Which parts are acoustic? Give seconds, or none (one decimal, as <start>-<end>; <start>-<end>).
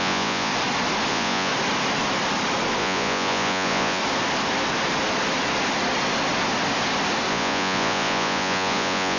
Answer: 0.5-1.1; 1.5-2.8; 4.0-7.3